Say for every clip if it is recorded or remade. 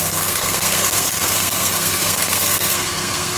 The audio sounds remade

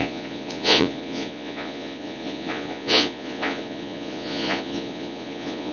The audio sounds remade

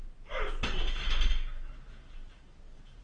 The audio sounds recorded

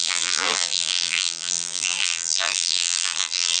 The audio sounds remade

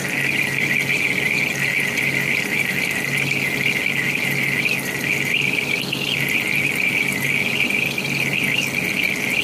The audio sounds recorded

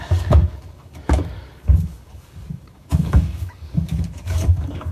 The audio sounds remade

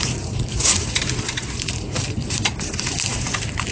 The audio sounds remade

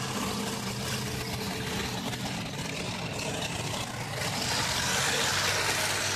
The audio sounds recorded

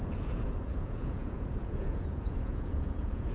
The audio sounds remade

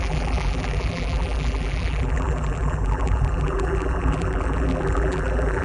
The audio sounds remade